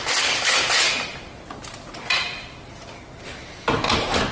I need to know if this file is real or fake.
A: real